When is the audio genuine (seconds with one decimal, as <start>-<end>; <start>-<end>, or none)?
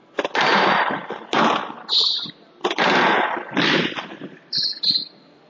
0.0-5.5